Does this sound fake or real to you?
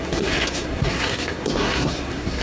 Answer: fake